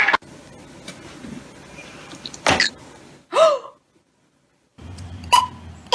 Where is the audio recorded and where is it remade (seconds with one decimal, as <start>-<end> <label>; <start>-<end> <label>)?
0.0-1.8 recorded; 1.8-2.7 remade; 2.7-4.7 recorded; 4.7-5.4 remade; 5.4-5.9 recorded